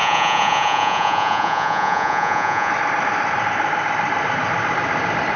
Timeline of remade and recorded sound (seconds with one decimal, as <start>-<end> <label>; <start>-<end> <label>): 0.0-2.7 remade; 2.7-5.4 recorded